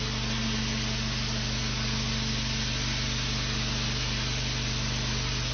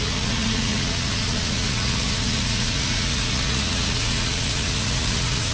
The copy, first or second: second